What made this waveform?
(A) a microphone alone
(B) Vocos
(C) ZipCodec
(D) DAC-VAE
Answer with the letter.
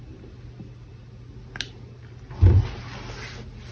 A